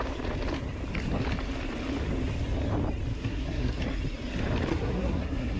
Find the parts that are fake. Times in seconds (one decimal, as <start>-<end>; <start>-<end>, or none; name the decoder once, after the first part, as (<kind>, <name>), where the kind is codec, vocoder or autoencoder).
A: 3.1-3.8 (codec, SNAC); 4.7-5.6